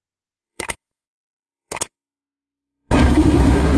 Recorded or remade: remade